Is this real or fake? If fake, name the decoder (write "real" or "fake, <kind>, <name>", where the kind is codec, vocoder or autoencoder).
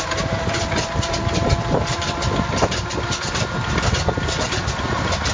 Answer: fake, vocoder, BigVGAN v2